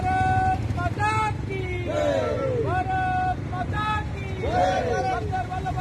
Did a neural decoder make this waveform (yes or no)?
no